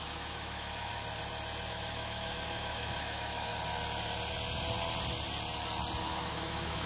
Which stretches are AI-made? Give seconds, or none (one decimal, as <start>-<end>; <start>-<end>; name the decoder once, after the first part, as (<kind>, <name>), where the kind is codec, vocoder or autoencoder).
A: 0.0-0.9 (autoencoder, DAC-VAE); 1.7-3.5; 6.0-6.9